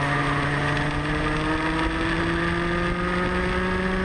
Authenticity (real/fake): real